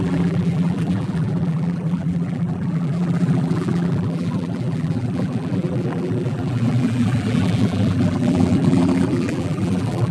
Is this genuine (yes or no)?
no